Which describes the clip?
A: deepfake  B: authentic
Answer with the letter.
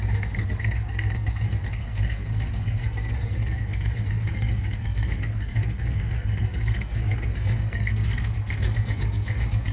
A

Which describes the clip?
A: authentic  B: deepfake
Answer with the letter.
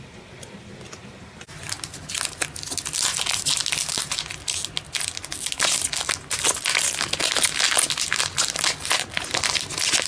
A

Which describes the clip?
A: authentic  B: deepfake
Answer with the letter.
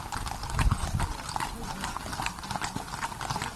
A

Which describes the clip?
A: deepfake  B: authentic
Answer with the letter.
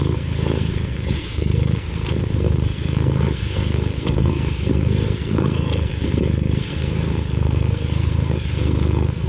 A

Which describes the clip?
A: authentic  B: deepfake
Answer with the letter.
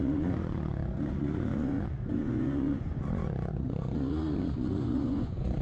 B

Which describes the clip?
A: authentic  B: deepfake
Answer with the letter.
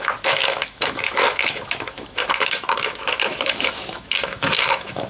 B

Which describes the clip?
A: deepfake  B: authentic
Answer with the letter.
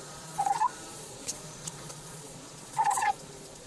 A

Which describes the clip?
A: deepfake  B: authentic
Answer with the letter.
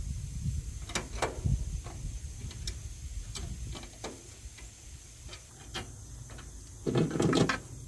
B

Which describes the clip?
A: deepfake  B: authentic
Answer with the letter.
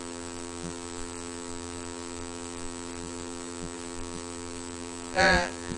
A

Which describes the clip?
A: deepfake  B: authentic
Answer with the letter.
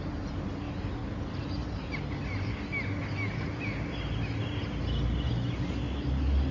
B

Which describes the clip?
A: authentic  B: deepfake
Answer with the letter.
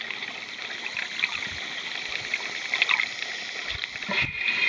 A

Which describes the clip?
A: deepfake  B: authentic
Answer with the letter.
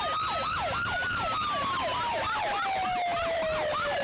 B